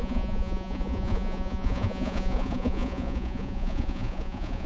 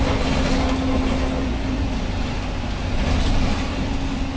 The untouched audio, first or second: second